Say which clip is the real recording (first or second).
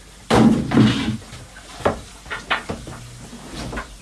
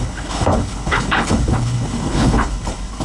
first